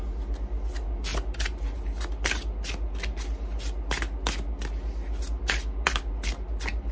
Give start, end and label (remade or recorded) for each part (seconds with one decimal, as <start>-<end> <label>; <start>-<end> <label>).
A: 0.0-6.9 recorded